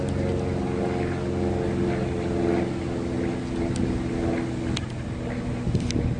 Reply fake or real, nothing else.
real